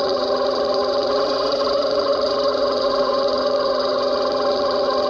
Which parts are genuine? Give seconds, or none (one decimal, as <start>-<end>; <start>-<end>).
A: none